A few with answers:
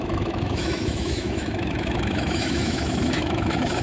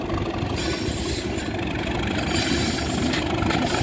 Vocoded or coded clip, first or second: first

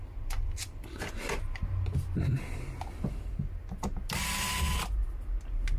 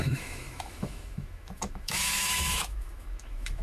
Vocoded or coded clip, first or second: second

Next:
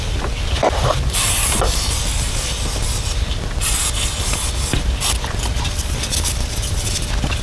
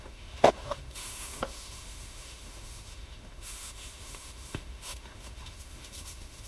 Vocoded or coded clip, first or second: second